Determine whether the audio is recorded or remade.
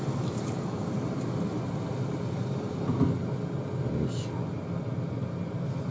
recorded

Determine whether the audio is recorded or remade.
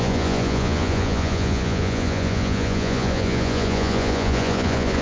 remade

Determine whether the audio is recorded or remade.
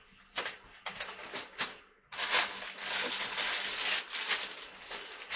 recorded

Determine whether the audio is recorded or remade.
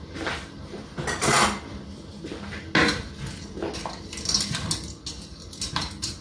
recorded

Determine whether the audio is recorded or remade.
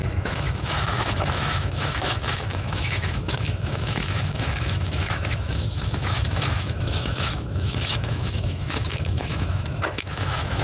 remade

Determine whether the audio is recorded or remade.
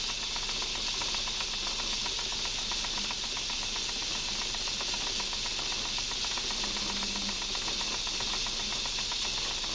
recorded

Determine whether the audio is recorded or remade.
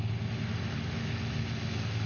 recorded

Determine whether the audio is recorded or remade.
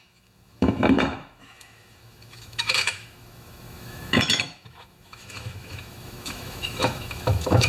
remade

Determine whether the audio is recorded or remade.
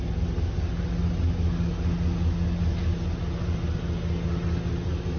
recorded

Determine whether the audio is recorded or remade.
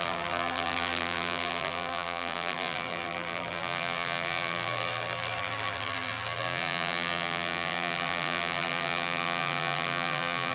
remade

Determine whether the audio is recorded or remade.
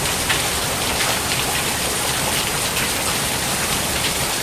recorded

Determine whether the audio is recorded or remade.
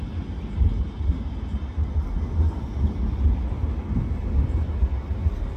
recorded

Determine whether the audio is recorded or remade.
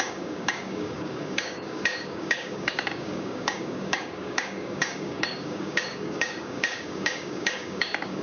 remade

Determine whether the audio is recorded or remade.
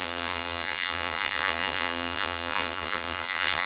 remade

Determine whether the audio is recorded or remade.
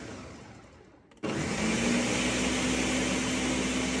recorded